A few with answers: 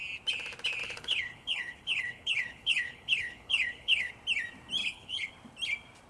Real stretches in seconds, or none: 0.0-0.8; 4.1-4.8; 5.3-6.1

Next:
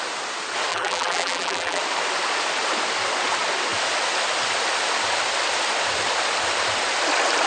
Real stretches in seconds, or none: 0.0-0.7; 1.8-7.5